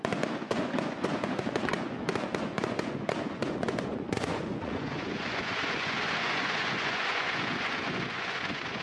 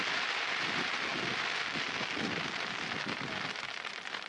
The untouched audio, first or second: second